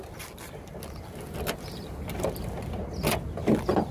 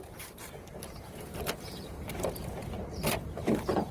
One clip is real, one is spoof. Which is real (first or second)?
first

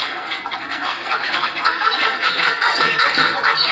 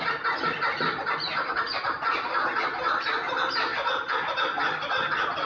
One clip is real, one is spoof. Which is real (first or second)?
second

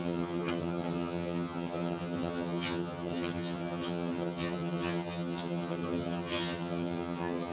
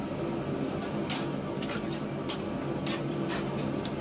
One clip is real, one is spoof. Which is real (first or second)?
second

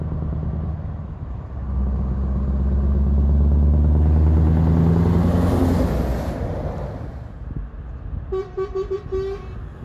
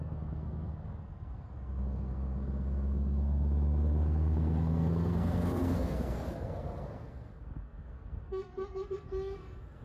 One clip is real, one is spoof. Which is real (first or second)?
first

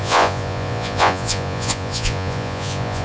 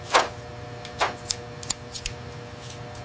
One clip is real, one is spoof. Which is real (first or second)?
second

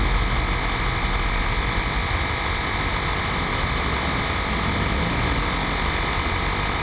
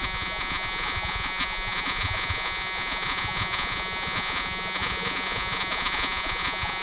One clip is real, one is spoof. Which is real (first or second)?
first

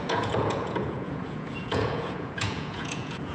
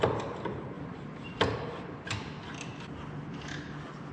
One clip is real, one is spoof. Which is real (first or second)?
second